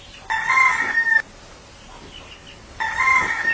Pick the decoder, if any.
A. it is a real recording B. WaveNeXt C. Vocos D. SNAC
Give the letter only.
A